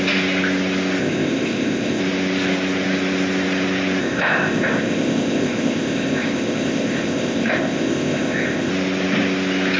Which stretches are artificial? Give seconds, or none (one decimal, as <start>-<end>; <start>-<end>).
1.0-2.0; 4.0-8.7